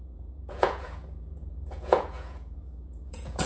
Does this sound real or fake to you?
fake